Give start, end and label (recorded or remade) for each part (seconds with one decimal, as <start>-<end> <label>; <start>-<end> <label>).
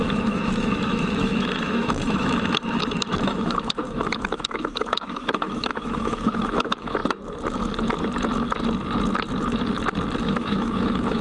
0.0-7.0 remade; 7.0-10.2 recorded; 10.2-11.2 remade